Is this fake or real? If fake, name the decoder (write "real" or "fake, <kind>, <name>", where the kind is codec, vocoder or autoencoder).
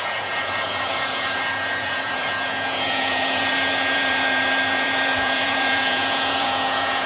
fake, vocoder, Vocos